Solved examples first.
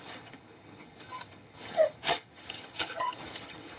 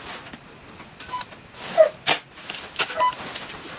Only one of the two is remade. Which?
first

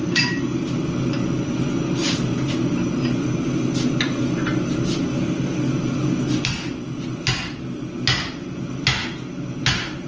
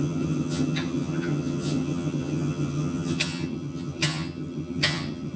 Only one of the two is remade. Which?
second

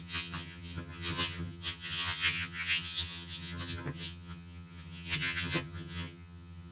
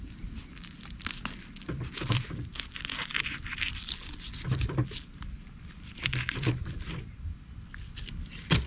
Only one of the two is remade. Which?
first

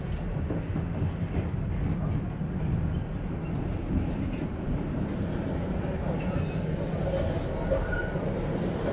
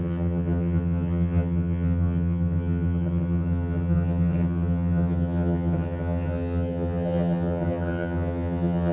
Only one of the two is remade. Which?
second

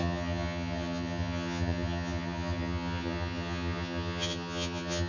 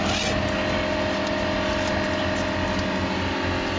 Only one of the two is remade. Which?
first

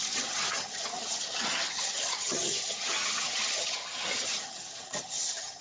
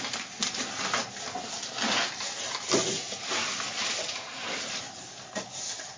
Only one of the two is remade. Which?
first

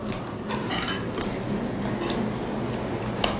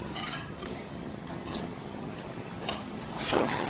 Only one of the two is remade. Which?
second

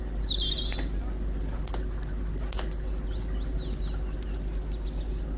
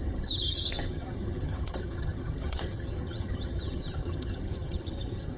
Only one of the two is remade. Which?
second